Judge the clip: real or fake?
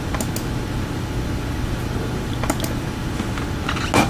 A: real